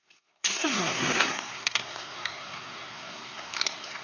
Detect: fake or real fake